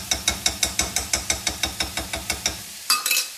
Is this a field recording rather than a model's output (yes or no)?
yes